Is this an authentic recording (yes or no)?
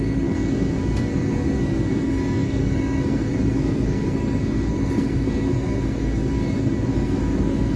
no